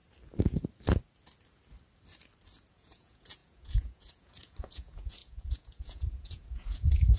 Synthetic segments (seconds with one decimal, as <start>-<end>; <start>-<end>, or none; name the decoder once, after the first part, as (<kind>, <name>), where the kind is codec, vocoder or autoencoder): 2.7-7.2 (vocoder, Vocos)